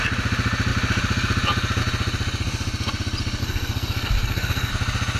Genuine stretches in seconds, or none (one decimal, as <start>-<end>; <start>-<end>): 0.0-3.4; 4.7-5.2